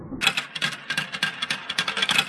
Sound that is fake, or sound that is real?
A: real